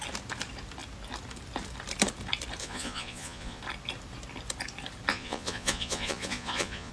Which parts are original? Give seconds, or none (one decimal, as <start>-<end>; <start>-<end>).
0.0-2.6; 3.6-5.1